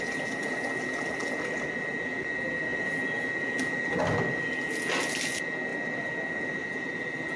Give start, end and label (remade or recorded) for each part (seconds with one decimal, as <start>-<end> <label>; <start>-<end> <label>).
0.0-7.4 recorded